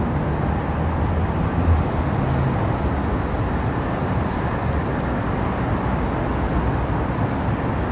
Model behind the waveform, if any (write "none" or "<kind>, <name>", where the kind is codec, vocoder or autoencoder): none